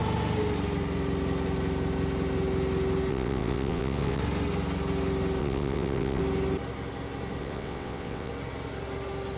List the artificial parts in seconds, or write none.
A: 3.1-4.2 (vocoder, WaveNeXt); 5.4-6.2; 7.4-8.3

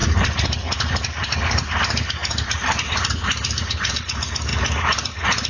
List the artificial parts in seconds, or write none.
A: none

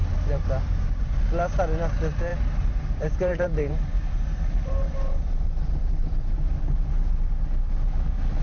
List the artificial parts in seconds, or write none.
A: 2.3-7.1 (vocoder, BigVGAN v2)

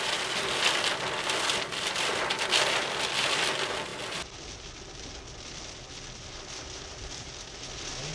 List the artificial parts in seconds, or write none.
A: none

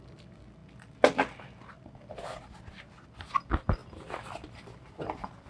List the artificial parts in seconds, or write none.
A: none

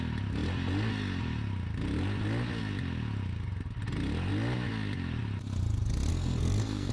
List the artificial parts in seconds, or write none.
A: 6.1-6.9 (codec, SNAC)